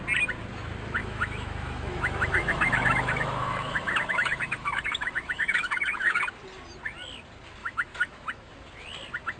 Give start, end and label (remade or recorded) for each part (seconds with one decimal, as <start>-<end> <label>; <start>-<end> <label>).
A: 0.0-1.0 recorded; 1.0-6.2 remade; 6.2-7.6 recorded; 7.6-8.5 remade; 8.5-9.4 recorded